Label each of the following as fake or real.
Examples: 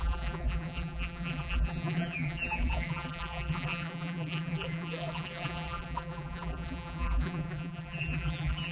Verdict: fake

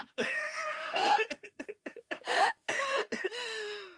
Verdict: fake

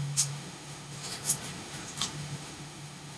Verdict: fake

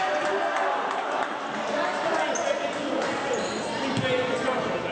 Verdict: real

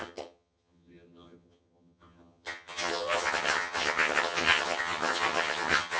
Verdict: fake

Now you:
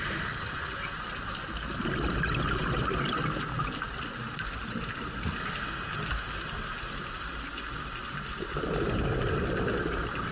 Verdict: real